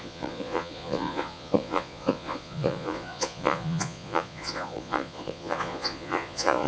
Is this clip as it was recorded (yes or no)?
no